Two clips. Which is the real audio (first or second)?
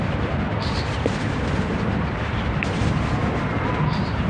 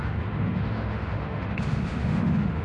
first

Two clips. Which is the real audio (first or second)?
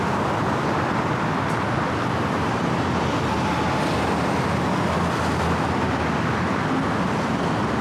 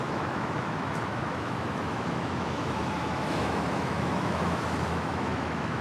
first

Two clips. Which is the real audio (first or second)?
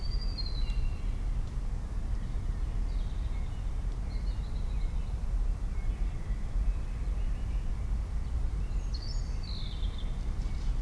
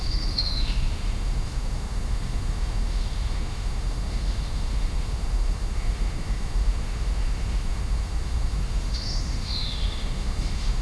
first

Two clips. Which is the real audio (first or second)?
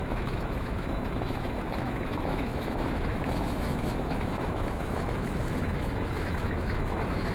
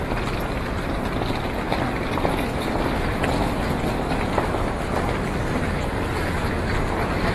second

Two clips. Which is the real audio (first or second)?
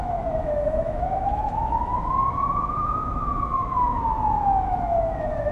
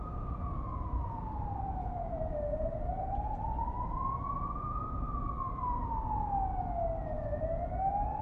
second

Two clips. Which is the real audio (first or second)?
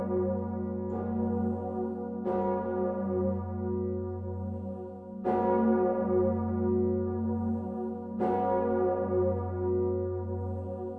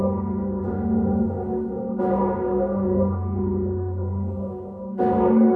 first